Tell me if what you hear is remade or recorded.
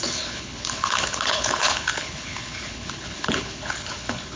remade